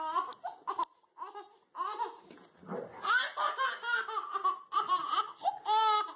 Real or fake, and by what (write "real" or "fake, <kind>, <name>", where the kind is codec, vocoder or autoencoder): real